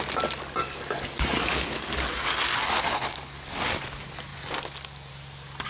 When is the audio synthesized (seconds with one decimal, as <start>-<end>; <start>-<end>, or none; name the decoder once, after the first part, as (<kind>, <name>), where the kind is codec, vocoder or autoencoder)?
0.6-3.7 (codec, DAC)